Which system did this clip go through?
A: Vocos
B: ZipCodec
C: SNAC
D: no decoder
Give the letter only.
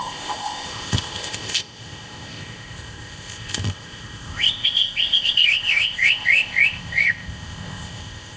B